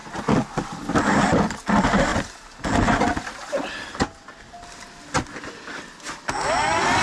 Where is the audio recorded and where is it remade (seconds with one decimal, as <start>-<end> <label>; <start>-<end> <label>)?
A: 0.0-7.0 recorded